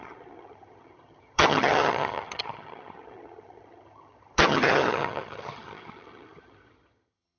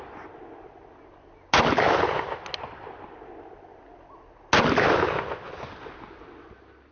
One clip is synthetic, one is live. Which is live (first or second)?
second